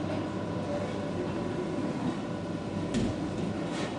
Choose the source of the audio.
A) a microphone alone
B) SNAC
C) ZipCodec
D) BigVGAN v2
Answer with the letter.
A